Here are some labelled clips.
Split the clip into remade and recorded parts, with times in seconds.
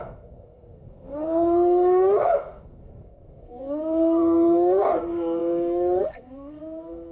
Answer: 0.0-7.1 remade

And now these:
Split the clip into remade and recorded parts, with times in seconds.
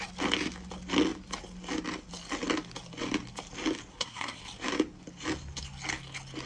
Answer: 0.0-3.9 recorded; 3.9-4.4 remade; 4.4-6.5 recorded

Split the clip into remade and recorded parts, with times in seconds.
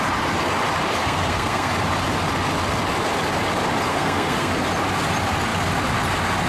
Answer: 0.0-1.0 recorded; 1.0-1.7 remade; 1.7-3.9 recorded; 3.9-4.5 remade; 4.5-6.5 recorded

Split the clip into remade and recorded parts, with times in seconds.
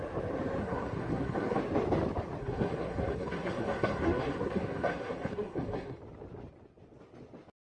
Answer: 0.0-0.6 recorded; 0.6-1.6 remade; 1.6-2.4 recorded; 2.4-6.0 remade; 6.0-7.7 recorded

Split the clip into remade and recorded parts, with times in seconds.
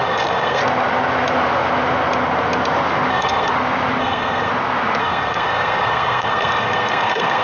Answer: 0.0-0.6 remade; 0.6-3.1 recorded; 3.1-3.5 remade; 3.5-4.0 recorded; 4.0-4.5 remade; 4.5-5.0 recorded; 5.0-7.4 remade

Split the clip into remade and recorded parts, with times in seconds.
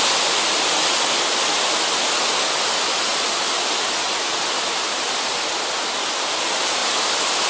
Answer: 0.0-7.5 recorded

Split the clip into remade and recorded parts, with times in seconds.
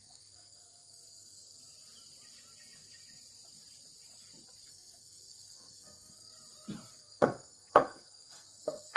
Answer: 0.0-1.6 remade; 1.6-4.7 recorded; 4.7-6.3 remade; 6.3-6.9 recorded; 6.9-9.0 remade